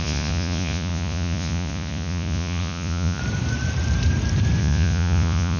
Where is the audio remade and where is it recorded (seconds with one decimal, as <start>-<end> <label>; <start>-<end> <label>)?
0.0-3.2 remade; 3.2-4.6 recorded; 4.6-5.6 remade